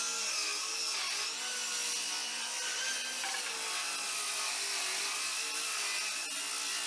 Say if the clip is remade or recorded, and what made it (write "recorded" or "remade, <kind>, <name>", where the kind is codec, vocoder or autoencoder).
recorded